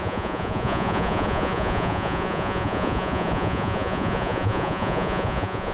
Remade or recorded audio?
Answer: remade